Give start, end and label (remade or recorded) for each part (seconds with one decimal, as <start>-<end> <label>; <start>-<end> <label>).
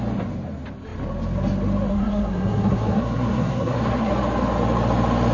0.0-1.9 recorded; 1.9-4.1 remade; 4.1-5.3 recorded